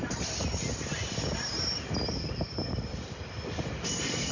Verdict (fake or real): fake